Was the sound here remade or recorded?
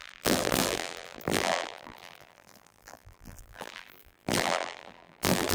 remade